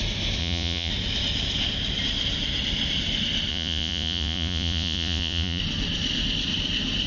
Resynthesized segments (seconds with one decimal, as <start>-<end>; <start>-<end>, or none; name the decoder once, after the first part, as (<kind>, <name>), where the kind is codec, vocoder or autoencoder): 0.4-0.9 (vocoder, Vocos); 3.5-5.6